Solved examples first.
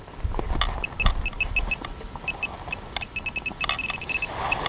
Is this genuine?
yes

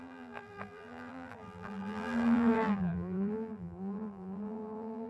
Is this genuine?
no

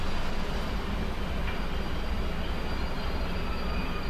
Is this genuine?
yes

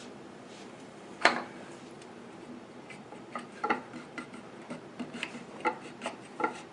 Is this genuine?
no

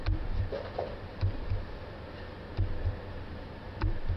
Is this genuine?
no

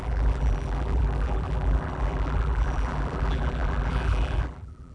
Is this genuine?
no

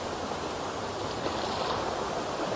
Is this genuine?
no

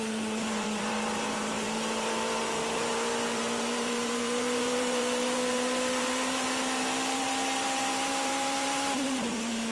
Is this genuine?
no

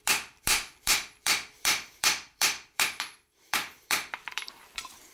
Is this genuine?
no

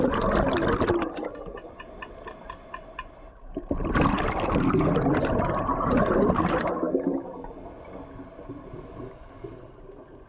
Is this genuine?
yes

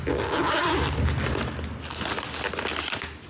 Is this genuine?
yes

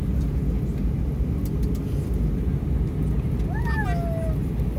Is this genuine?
yes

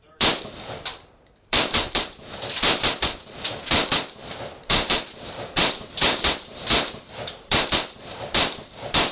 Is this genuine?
no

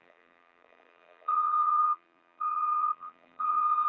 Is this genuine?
no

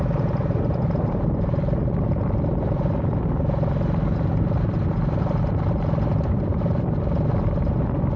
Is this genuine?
yes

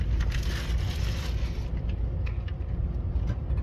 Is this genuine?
yes